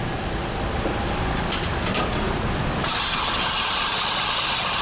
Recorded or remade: recorded